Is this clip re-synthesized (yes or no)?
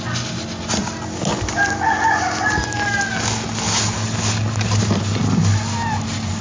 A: no